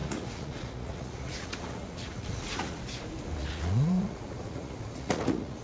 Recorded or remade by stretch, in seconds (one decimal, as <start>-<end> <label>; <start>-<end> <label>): 0.0-2.8 remade; 2.8-3.4 recorded; 3.4-5.6 remade

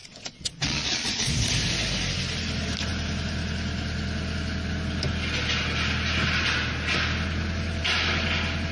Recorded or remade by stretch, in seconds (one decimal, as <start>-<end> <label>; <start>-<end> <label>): 0.0-1.3 remade; 1.3-8.7 recorded